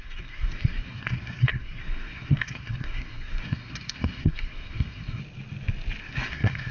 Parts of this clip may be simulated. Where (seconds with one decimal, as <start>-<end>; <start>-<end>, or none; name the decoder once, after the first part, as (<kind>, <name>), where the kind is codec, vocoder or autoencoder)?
0.0-5.2 (codec, SNAC); 6.0-6.7